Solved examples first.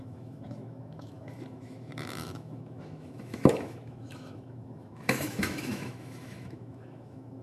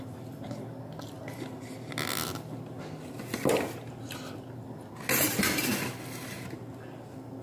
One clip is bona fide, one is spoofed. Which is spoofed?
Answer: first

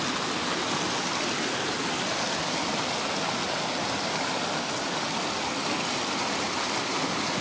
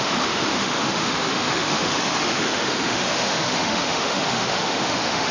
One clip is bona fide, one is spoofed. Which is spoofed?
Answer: second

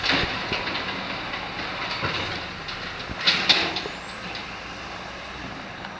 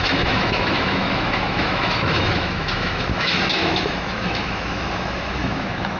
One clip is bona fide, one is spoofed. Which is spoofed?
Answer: second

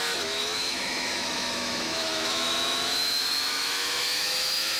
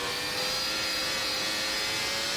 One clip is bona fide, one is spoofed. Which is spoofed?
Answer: first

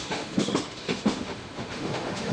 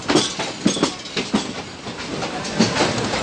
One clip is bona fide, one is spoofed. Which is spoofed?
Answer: first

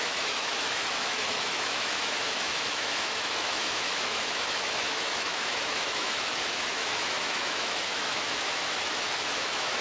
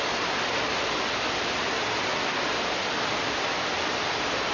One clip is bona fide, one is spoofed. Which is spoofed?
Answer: first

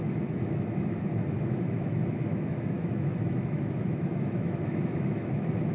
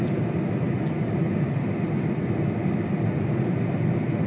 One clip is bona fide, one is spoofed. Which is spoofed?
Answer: first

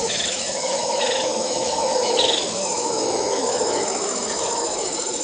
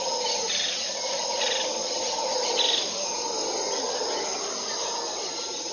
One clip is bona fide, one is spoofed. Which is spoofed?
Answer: first